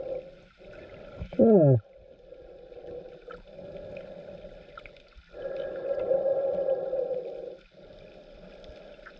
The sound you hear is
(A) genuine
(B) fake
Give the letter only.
A